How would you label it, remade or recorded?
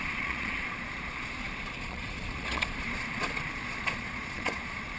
remade